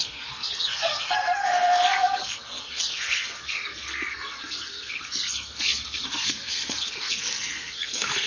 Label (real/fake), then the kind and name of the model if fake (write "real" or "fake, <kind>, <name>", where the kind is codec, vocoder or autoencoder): fake, codec, SNAC